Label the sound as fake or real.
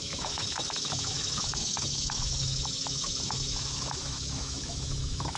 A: fake